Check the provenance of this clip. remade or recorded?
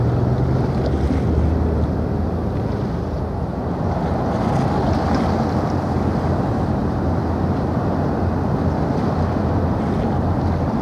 recorded